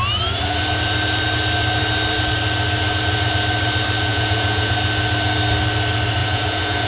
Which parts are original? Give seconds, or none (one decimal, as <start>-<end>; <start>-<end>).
0.0-4.1; 4.7-6.2